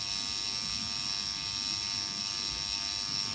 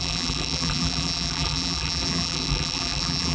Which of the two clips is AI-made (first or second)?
second